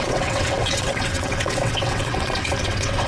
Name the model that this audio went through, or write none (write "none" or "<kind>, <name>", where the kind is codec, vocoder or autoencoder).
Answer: vocoder, WaveNeXt